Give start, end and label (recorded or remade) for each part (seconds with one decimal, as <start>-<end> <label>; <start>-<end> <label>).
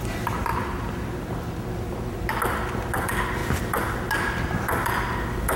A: 0.0-5.6 recorded